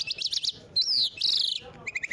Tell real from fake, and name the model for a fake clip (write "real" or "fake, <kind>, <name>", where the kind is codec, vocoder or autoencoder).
real